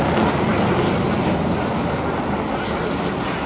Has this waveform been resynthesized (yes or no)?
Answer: no